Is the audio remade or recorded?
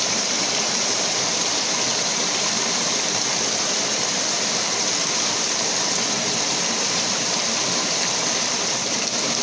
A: remade